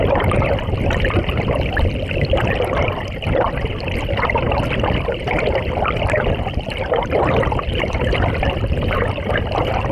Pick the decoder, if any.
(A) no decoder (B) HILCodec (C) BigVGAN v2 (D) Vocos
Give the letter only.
A